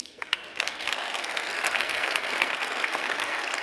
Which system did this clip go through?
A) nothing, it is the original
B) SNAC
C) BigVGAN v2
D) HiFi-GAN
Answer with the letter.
B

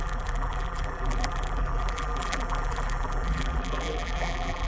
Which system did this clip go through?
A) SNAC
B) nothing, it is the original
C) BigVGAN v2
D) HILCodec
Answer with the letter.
C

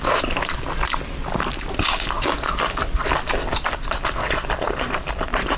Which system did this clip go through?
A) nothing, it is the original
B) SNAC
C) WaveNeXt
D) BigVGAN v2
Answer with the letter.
A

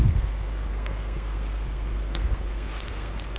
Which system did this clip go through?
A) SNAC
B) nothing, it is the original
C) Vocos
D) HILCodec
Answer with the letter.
A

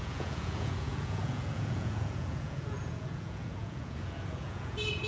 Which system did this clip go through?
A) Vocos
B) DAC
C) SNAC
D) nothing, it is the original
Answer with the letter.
A